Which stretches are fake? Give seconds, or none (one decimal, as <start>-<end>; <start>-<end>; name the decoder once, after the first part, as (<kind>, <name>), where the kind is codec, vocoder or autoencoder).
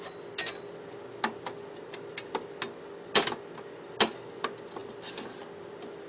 none